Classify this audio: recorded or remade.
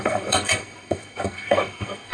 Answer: remade